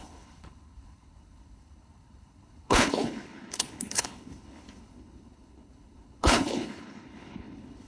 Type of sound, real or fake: fake